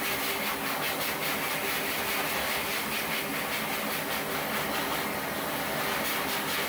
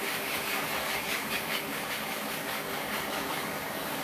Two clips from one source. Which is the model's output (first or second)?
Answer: second